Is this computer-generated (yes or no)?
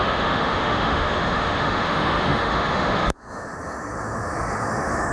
yes